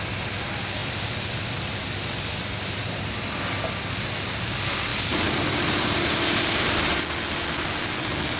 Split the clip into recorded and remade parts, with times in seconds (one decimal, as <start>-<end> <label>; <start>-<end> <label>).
0.0-4.9 recorded; 4.9-7.0 remade; 7.0-8.4 recorded